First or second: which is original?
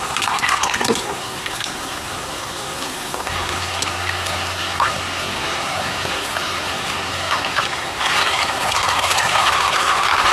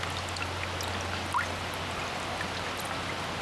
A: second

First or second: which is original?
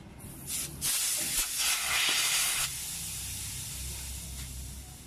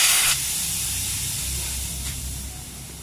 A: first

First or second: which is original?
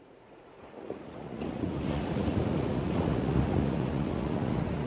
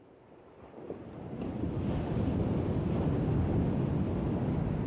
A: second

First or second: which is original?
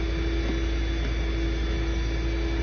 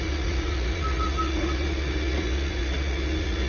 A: first